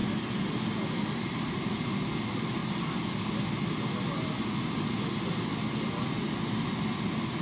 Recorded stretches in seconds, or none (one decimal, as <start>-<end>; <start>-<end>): 0.0-7.4